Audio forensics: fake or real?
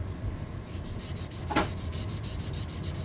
real